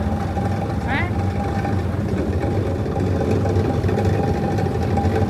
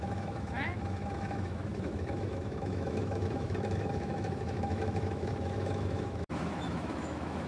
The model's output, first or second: second